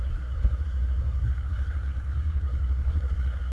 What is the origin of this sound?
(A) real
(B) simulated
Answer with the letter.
B